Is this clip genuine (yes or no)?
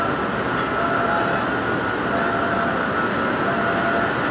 yes